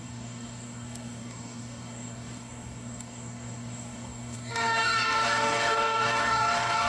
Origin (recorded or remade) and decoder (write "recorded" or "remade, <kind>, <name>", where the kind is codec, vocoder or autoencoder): remade, codec, DAC